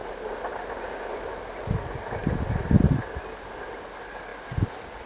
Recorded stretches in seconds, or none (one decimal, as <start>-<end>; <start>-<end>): 0.0-5.1